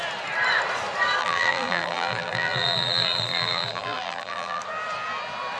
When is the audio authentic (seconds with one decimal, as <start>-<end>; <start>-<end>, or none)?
0.0-1.2; 4.6-5.6